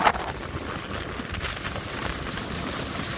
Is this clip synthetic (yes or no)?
no